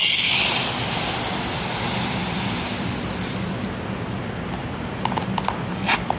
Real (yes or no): yes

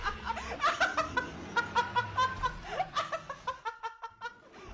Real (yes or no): yes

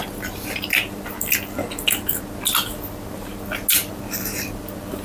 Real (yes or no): yes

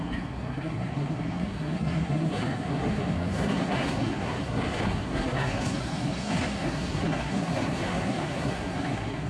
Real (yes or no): no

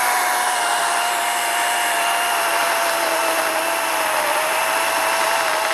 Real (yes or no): yes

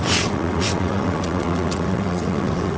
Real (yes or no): no